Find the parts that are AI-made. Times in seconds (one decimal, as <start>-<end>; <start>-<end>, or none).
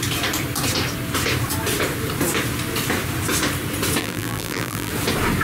4.0-4.9